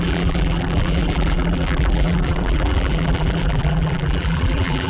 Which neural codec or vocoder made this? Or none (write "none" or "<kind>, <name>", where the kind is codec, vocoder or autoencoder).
vocoder, BigVGAN v2